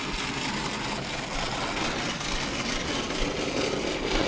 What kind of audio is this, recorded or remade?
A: recorded